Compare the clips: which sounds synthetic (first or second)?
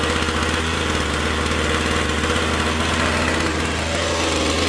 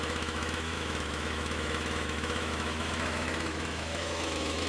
second